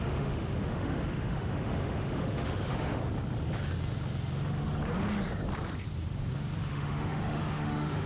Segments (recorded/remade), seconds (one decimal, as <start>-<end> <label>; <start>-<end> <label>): 0.0-3.0 remade; 3.0-6.7 recorded; 6.7-8.1 remade